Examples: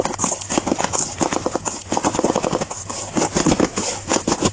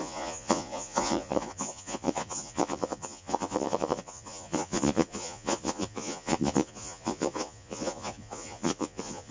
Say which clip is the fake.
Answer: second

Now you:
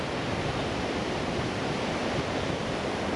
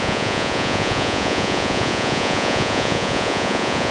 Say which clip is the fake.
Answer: second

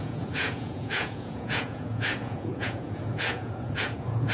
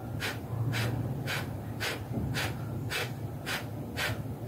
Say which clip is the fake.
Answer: first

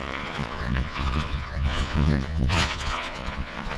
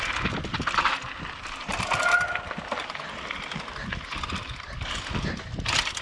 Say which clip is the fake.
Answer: first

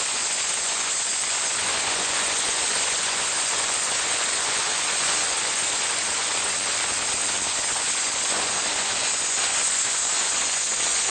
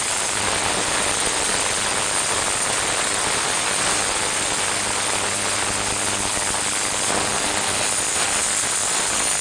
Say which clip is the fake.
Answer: first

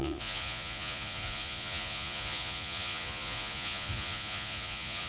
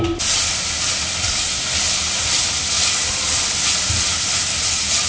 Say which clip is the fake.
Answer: first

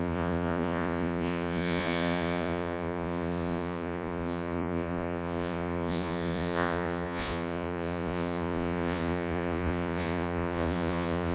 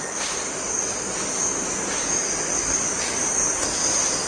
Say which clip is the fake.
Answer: first